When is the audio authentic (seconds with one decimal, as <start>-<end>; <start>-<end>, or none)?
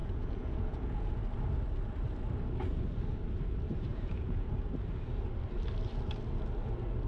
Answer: 1.2-3.9; 4.5-7.1